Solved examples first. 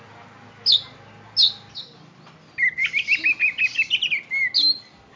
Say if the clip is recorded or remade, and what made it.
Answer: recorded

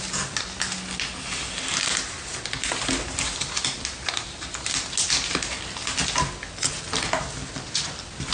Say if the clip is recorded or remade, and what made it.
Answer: recorded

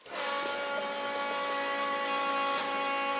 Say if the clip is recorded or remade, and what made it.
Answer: recorded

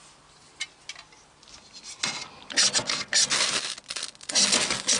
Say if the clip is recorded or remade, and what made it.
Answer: recorded